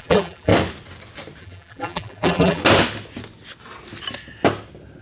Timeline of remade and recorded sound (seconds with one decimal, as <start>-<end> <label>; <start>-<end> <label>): 0.0-0.5 remade; 0.5-1.4 recorded; 1.4-2.6 remade; 2.6-5.0 recorded